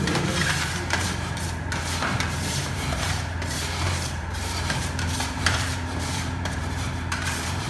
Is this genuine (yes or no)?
no